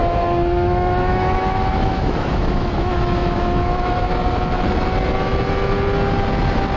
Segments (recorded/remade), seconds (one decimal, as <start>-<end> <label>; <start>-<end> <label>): 0.0-4.1 remade; 4.1-6.8 recorded